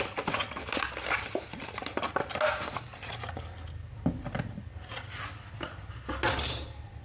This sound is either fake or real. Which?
real